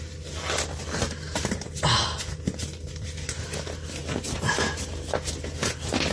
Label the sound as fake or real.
real